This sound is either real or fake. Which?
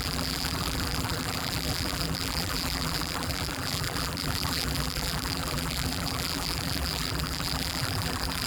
fake